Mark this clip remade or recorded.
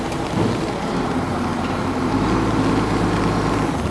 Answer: recorded